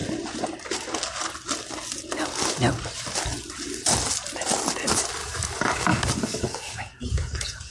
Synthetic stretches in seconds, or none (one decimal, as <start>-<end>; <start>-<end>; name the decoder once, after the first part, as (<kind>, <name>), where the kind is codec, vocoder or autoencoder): 5.2-7.7 (codec, DAC)